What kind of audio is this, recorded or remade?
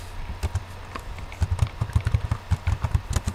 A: recorded